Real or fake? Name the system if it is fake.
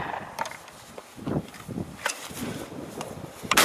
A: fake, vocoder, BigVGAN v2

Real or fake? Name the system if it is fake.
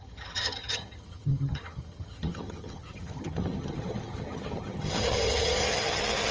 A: fake, vocoder, HiFi-GAN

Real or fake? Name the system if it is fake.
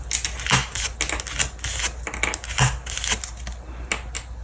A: real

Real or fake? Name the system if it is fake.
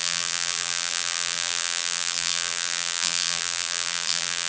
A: fake, vocoder, BigVGAN v2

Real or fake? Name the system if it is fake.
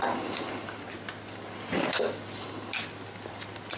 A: real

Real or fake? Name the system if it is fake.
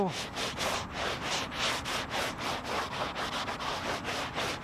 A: real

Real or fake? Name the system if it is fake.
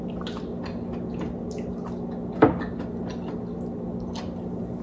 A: real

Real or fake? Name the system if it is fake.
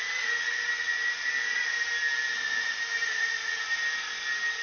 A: real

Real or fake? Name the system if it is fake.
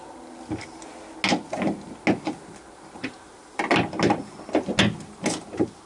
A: real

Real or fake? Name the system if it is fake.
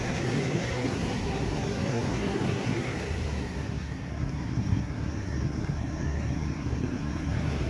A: fake, codec, SNAC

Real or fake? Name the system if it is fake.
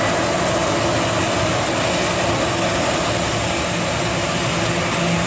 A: real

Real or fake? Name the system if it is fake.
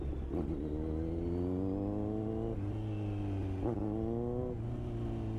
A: real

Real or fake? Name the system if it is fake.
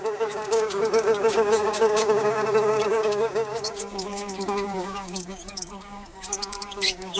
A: fake, codec, DAC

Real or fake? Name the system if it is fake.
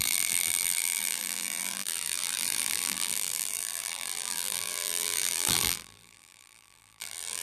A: fake, vocoder, BigVGAN v2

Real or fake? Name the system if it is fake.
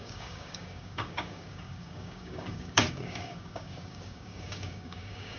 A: fake, codec, DAC